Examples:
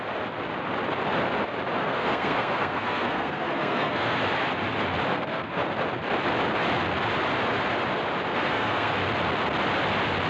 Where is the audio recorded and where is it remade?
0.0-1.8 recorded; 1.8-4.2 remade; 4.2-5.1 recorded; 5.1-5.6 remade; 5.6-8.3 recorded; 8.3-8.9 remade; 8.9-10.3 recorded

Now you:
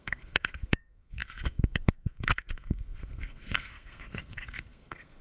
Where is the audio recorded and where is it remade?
0.0-5.2 remade